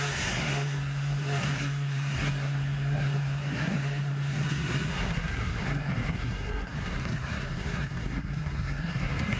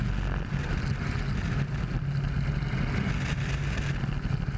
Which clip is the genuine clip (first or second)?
second